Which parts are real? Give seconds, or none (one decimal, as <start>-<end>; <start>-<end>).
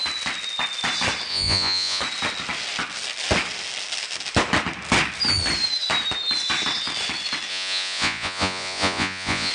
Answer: 0.0-1.3; 2.0-7.5